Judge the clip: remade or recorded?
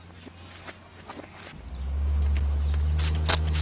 recorded